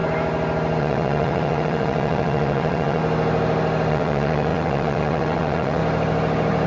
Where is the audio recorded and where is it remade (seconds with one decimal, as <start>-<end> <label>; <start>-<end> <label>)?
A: 0.0-0.8 recorded; 0.8-3.0 remade; 3.0-3.9 recorded; 3.9-5.8 remade; 5.8-6.7 recorded